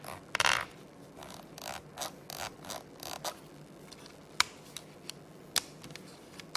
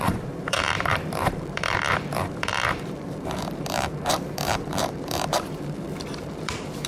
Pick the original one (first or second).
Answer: first